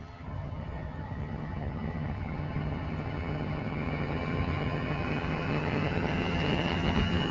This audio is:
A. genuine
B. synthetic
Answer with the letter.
B